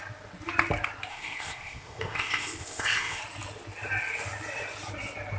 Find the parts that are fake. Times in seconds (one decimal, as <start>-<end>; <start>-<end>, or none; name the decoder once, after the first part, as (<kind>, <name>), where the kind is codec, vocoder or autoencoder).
1.1-3.2 (codec, ZipCodec)